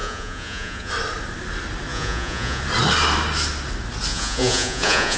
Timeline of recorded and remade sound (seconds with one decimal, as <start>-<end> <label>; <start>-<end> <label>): 0.0-0.9 remade; 0.9-1.9 recorded; 1.9-2.6 remade; 2.6-4.1 recorded; 4.1-5.2 remade

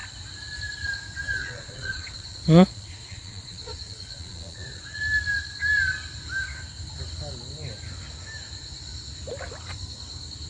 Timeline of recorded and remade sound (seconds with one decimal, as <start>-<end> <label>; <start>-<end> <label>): 0.0-1.4 recorded; 1.4-5.0 remade; 5.0-10.5 recorded